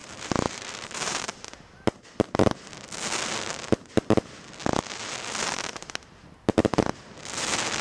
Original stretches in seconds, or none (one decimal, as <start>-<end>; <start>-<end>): 1.7-7.8